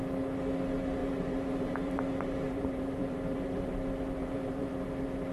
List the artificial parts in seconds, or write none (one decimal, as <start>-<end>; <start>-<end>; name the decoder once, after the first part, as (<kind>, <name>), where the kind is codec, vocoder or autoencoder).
1.0-3.7 (vocoder, BigVGAN v2); 4.2-4.7